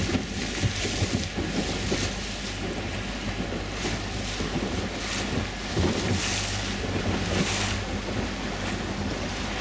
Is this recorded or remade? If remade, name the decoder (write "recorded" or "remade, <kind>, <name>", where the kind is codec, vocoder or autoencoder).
recorded